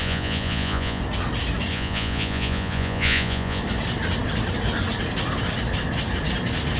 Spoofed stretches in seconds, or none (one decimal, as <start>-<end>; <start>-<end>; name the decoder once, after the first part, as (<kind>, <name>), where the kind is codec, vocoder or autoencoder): 0.0-1.0 (vocoder, Vocos); 1.7-3.6